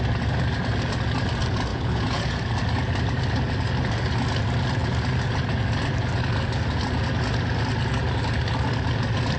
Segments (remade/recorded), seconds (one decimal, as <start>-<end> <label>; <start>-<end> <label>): 0.0-1.7 recorded; 1.7-2.4 remade; 2.4-9.4 recorded

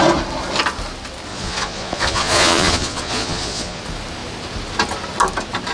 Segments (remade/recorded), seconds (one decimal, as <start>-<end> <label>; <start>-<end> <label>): 0.0-1.3 recorded; 1.3-3.8 remade; 3.8-5.7 recorded

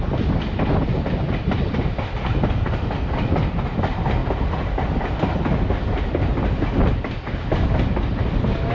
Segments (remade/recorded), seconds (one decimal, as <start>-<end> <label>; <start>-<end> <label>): 0.0-8.7 recorded

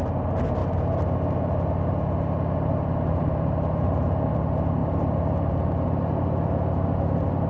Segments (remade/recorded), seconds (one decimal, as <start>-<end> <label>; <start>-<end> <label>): 0.0-7.5 recorded

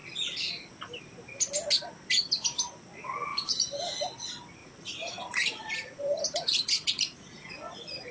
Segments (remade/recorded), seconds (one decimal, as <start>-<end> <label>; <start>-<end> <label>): 0.0-4.6 recorded; 4.6-7.5 remade; 7.5-8.1 recorded

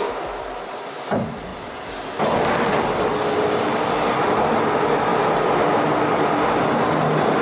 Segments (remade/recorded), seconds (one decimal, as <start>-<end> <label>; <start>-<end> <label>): 0.0-7.4 recorded

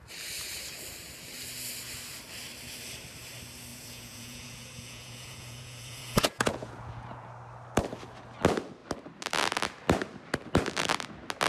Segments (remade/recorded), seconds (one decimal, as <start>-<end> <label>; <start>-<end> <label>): 0.0-3.7 recorded; 3.7-7.3 remade; 7.3-11.5 recorded

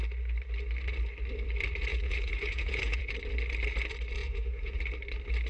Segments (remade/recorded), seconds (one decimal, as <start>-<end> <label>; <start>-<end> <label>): 0.0-1.9 recorded; 1.9-3.1 remade; 3.1-4.2 recorded; 4.2-4.8 remade; 4.8-5.5 recorded